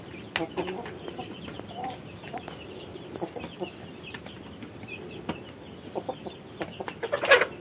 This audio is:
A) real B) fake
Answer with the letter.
A